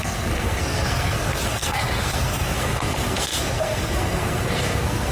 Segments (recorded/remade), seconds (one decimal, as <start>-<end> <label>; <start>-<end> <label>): 0.0-5.1 remade